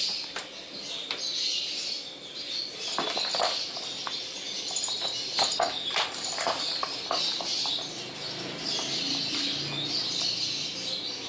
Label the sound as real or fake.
real